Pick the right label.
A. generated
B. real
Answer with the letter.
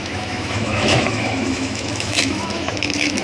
A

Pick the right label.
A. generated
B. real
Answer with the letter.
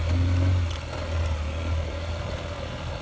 B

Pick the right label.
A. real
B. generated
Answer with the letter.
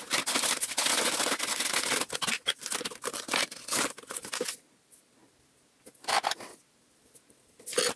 A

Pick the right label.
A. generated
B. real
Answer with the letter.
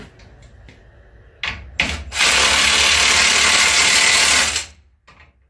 B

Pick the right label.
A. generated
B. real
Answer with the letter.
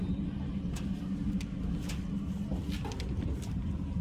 B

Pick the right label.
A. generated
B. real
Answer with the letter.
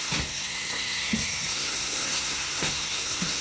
A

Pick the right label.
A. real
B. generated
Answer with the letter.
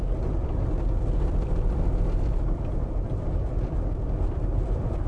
B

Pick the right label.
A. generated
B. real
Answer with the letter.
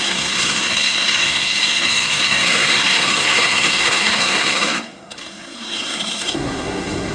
A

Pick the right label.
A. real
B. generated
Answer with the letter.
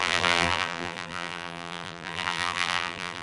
B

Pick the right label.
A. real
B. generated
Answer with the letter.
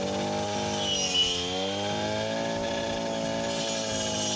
A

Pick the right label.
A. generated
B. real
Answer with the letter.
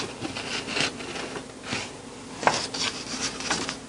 B